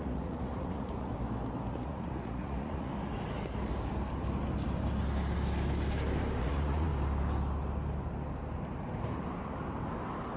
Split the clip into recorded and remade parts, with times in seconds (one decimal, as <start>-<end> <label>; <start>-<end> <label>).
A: 0.0-1.1 remade; 1.1-1.7 recorded; 1.7-2.9 remade; 2.9-6.4 recorded; 6.4-6.9 remade; 6.9-10.4 recorded